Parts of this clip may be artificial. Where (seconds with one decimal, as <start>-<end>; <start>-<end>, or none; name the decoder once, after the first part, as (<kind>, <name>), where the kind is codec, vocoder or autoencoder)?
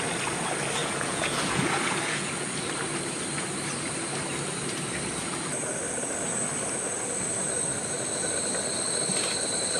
0.8-2.5 (vocoder, Vocos)